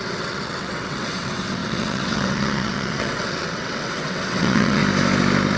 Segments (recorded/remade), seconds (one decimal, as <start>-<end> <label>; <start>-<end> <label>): 0.0-4.8 remade; 4.8-5.6 recorded